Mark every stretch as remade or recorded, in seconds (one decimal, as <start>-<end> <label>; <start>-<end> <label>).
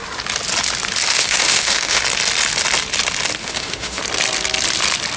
0.0-1.1 recorded; 1.1-2.0 remade; 2.0-3.4 recorded; 3.4-4.0 remade; 4.0-5.2 recorded